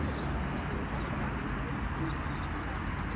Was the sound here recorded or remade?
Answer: recorded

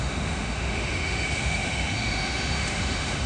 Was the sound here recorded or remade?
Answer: remade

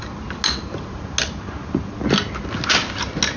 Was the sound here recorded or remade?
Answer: recorded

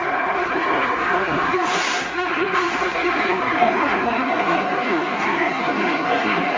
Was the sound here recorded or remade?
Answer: remade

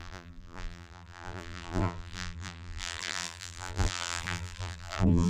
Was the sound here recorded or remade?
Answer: remade